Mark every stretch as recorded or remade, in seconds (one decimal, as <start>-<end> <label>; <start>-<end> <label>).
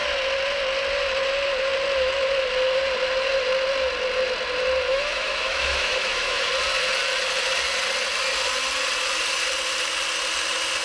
0.0-4.9 recorded; 4.9-6.5 remade; 6.5-10.8 recorded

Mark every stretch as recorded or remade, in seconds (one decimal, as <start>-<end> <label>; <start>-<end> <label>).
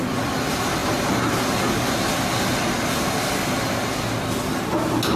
0.0-5.2 recorded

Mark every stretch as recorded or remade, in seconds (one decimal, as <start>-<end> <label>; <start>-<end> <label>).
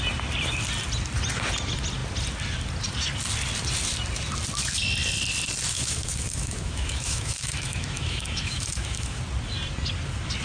0.0-5.7 recorded; 5.7-9.2 remade; 9.2-10.4 recorded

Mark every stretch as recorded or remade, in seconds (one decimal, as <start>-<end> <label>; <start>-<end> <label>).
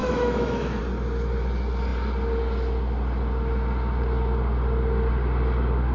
0.0-0.8 remade; 0.8-5.9 recorded